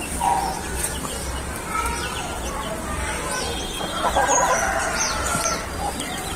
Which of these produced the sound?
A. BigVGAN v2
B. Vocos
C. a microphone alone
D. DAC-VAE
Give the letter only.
C